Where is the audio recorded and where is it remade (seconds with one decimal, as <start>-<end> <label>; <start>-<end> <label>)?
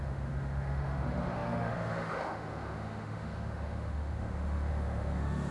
0.0-5.5 remade